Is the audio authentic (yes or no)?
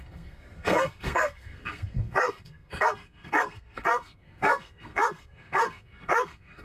no